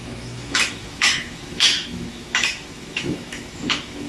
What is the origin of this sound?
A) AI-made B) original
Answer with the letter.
A